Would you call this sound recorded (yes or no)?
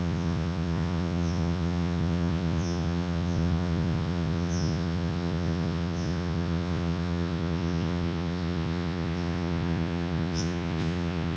no